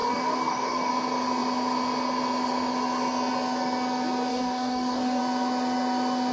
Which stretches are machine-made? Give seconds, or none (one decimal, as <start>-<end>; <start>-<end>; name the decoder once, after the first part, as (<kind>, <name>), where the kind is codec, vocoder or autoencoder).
0.0-0.9 (codec, DAC); 4.3-5.2